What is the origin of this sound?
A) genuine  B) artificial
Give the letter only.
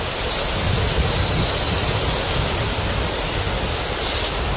A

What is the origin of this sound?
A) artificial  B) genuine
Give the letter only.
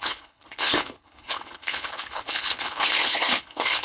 A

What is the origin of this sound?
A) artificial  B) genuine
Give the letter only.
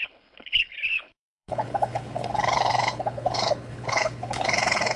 A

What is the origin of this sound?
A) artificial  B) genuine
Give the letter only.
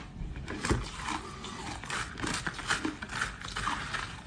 B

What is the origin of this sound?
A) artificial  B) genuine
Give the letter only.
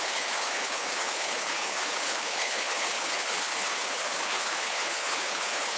A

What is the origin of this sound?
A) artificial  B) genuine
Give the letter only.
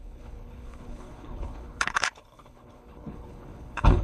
A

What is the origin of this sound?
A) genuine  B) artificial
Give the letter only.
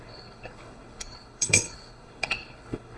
B